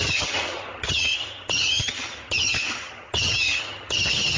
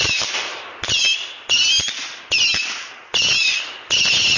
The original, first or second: second